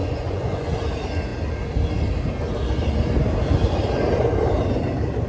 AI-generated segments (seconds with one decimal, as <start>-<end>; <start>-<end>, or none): 0.0-0.7